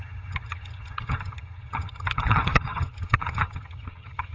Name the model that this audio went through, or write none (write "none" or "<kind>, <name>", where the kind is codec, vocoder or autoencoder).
vocoder, HiFi-GAN